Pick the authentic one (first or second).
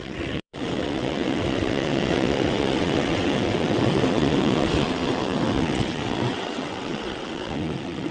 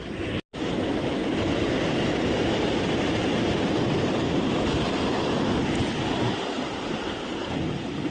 second